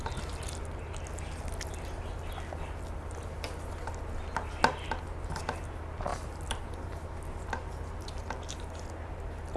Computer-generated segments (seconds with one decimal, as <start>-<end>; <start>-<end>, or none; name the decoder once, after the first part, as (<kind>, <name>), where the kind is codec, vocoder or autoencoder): none